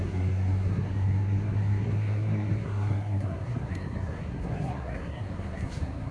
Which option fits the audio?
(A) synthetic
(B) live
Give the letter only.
A